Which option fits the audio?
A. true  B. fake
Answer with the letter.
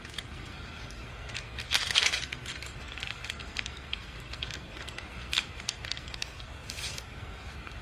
B